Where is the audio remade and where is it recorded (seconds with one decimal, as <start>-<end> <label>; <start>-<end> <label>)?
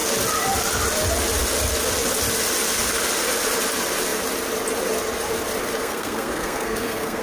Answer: 0.0-5.8 recorded; 5.8-7.2 remade